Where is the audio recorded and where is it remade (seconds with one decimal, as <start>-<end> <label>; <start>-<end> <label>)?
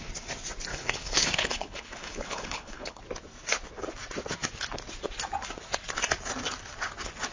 0.0-0.7 recorded; 0.7-3.0 remade; 3.0-7.3 recorded